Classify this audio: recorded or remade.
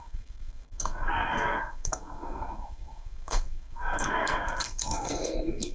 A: remade